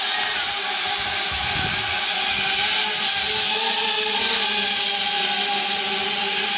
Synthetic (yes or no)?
no